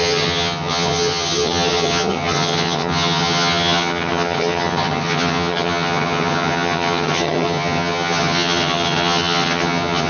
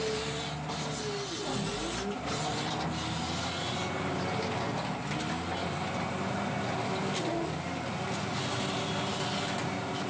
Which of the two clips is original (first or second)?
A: second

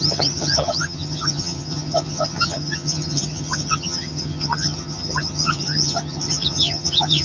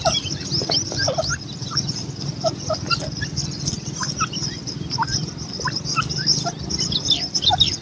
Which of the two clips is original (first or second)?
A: second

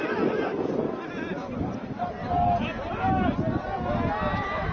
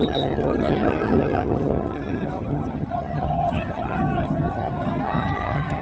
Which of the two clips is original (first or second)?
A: first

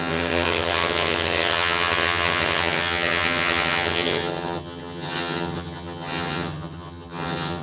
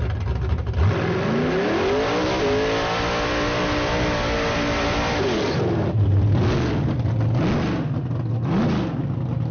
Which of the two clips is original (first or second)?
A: second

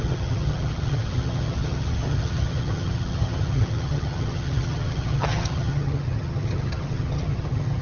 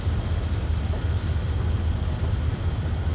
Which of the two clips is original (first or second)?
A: second